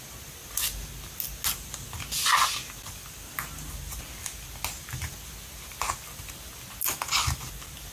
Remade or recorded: recorded